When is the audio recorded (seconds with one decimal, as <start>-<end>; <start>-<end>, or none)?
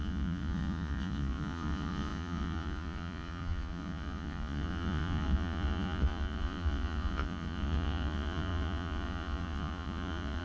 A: none